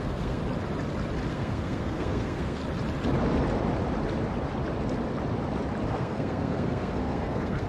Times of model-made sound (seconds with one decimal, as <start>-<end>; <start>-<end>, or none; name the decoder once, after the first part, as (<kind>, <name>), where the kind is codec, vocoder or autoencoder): 0.0-0.4 (codec, SNAC); 1.3-2.6; 5.9-7.7